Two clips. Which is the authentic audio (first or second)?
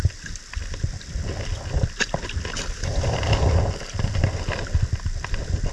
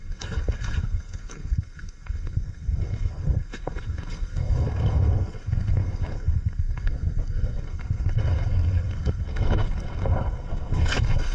first